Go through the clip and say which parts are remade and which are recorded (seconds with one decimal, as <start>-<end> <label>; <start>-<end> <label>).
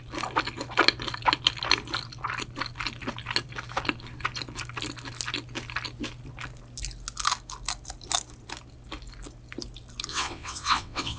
0.0-10.1 recorded; 10.1-11.2 remade